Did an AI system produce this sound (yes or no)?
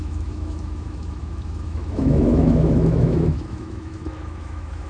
yes